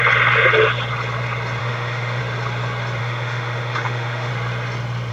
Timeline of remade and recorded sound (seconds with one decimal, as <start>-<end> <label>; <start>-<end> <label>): 0.0-1.6 recorded; 1.6-2.2 remade; 2.2-3.0 recorded; 3.0-4.3 remade; 4.3-5.1 recorded

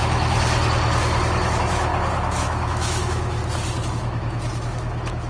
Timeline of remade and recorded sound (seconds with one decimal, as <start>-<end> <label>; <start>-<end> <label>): 0.0-1.5 recorded; 1.5-1.9 remade; 1.9-2.4 recorded; 2.4-3.4 remade; 3.4-3.9 recorded; 3.9-5.3 remade